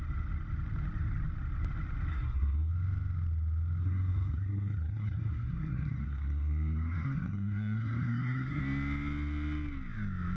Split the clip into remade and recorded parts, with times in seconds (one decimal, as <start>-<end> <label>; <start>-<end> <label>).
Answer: 0.0-2.1 recorded; 2.1-2.7 remade; 2.7-3.8 recorded; 3.8-8.6 remade; 8.6-10.4 recorded